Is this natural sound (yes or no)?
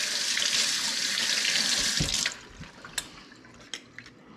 yes